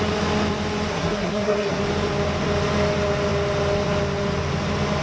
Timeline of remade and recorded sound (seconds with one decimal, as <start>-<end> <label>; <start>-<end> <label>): 0.0-0.9 recorded; 0.9-1.8 remade; 1.8-5.0 recorded

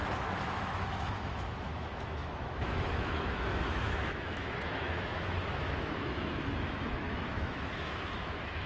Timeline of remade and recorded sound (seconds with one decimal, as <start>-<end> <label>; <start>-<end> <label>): 0.0-8.7 remade

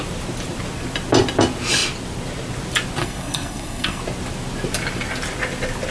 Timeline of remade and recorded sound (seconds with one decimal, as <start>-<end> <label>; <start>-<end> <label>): 0.0-3.0 recorded; 3.0-4.0 remade; 4.0-5.9 recorded

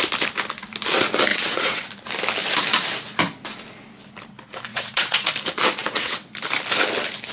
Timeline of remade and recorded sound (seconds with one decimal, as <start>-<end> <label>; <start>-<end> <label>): 0.0-1.3 recorded; 1.3-1.9 remade; 1.9-4.7 recorded; 4.7-5.3 remade; 5.3-5.8 recorded; 5.8-6.3 remade; 6.3-7.3 recorded

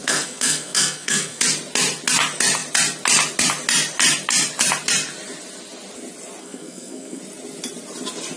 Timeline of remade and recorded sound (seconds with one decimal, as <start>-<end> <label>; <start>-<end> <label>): 0.0-1.4 remade; 1.4-6.4 recorded; 6.4-7.2 remade; 7.2-8.4 recorded

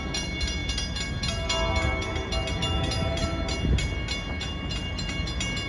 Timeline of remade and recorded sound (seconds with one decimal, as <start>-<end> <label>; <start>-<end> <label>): 0.0-5.7 recorded

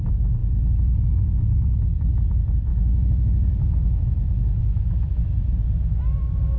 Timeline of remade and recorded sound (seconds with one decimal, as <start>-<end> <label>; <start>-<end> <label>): 0.0-2.7 recorded; 2.7-5.2 remade; 5.2-6.6 recorded

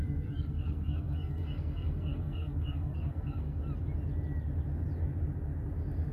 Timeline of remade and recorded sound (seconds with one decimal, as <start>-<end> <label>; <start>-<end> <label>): 0.0-3.6 remade; 3.6-6.1 recorded